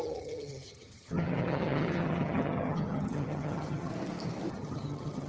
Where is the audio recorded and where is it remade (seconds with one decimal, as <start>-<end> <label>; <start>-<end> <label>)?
0.0-3.9 remade; 3.9-4.5 recorded; 4.5-5.3 remade